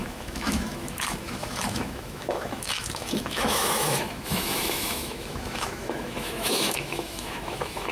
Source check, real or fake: fake